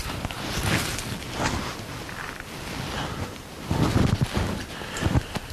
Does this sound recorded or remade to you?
recorded